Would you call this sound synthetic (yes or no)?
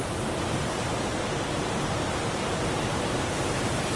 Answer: yes